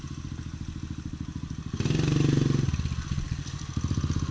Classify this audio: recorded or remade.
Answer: recorded